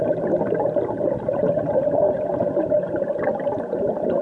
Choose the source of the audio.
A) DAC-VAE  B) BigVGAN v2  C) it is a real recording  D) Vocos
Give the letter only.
C